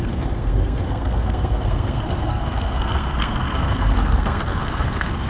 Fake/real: fake